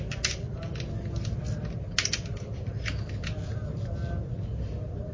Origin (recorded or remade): recorded